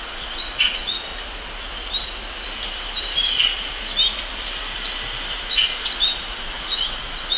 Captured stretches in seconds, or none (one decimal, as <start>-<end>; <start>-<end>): 1.1-5.4

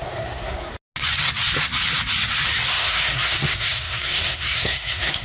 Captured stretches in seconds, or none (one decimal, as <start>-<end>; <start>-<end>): 0.7-2.7

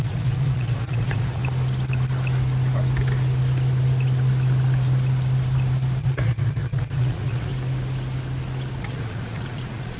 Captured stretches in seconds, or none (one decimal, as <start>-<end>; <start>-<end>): 1.4-6.0; 7.5-8.8